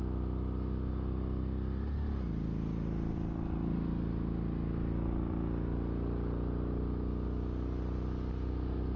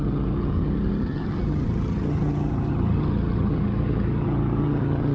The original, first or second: first